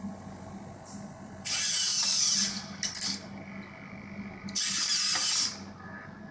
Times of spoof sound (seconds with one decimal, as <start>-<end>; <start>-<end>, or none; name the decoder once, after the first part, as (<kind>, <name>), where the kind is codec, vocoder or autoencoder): none